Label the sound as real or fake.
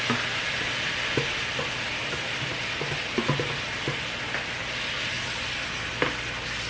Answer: real